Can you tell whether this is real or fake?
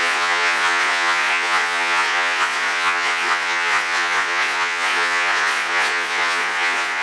fake